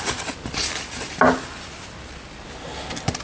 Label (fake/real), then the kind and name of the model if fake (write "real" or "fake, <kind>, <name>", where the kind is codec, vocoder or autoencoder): real